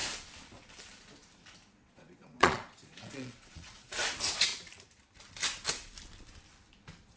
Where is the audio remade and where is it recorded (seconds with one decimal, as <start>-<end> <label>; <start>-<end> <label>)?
0.0-1.8 recorded; 1.8-4.0 remade; 4.0-7.2 recorded